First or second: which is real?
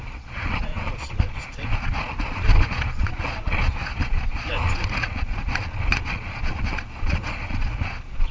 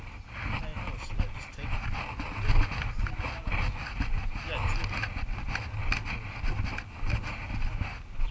second